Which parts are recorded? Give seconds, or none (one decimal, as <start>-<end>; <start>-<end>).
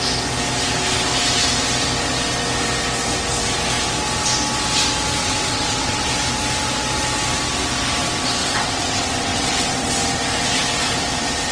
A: 0.0-5.2; 6.1-8.4; 9.9-11.5